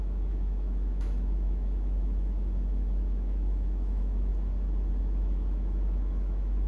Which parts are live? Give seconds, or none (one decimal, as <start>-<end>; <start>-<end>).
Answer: 4.3-5.0